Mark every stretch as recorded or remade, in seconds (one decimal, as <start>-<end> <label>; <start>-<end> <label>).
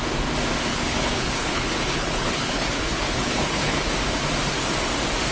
0.0-0.7 recorded; 0.7-3.9 remade; 3.9-5.3 recorded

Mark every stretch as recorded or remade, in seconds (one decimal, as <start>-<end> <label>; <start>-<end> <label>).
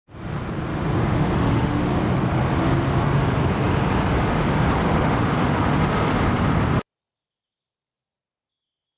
0.0-1.0 recorded; 1.0-1.8 remade; 1.8-4.9 recorded; 4.9-5.8 remade; 5.8-9.0 recorded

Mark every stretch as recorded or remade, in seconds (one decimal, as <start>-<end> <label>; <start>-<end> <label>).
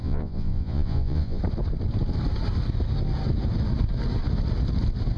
0.0-1.4 remade; 1.4-5.2 recorded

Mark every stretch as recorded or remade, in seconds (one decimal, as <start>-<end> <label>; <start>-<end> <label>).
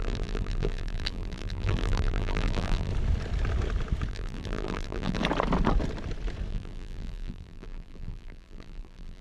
0.0-2.9 remade; 2.9-4.1 recorded; 4.1-5.2 remade; 5.2-6.5 recorded; 6.5-9.2 remade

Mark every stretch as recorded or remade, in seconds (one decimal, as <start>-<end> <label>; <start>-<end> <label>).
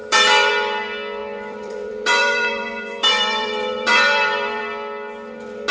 0.0-0.5 remade; 0.5-1.2 recorded; 1.2-4.6 remade; 4.6-5.7 recorded